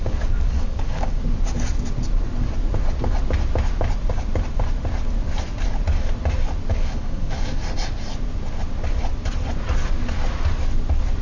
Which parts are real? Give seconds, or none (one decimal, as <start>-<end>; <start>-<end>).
1.2-6.7; 7.6-11.2